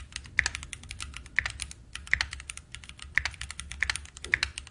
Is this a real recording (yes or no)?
yes